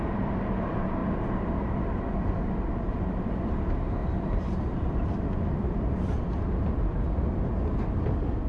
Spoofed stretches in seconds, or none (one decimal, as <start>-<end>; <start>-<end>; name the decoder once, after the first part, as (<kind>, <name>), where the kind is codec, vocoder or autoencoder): none